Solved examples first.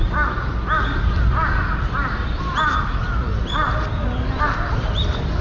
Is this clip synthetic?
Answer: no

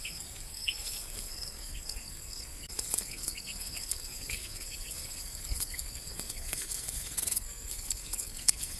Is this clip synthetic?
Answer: yes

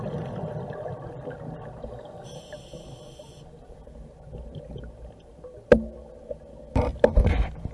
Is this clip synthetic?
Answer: no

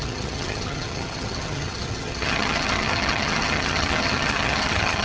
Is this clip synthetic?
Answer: yes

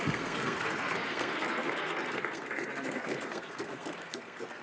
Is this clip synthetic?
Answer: yes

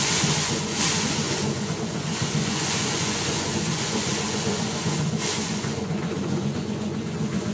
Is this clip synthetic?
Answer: yes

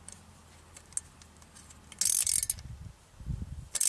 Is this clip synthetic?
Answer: no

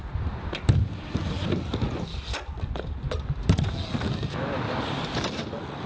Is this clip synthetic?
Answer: no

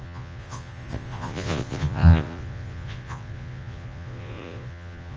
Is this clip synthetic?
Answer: yes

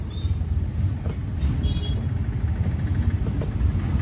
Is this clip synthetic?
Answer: no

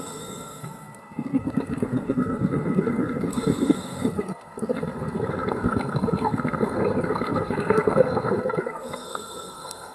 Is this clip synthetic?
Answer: yes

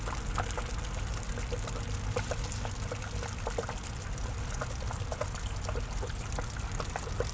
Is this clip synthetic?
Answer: no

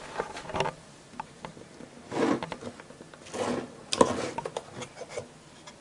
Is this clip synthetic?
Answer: no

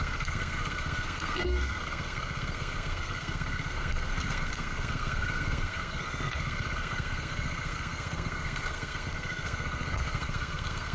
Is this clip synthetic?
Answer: yes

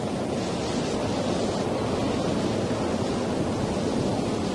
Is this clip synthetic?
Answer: no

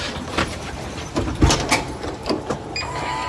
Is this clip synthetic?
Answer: yes